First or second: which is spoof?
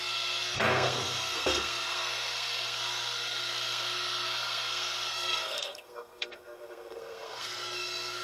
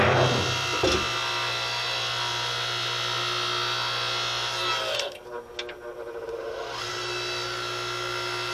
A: first